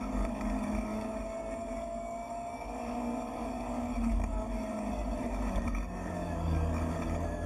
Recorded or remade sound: remade